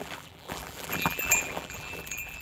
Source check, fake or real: fake